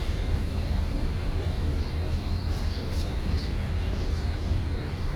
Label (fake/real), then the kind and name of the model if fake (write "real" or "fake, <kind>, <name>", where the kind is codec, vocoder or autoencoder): fake, codec, DAC